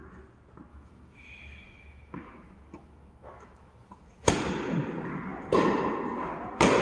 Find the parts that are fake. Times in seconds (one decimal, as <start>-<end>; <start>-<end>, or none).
0.7-4.3